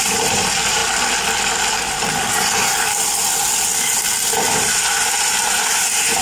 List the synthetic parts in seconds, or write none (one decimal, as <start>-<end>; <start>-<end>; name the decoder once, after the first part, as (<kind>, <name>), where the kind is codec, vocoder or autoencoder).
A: 0.0-0.8 (vocoder, BigVGAN v2); 4.5-6.2